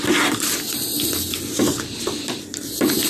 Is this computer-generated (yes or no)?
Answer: no